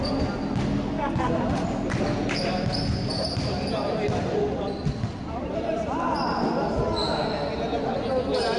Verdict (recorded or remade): recorded